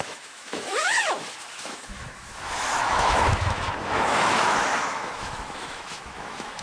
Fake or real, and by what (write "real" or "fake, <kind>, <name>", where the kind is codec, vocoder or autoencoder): fake, autoencoder, DAC-VAE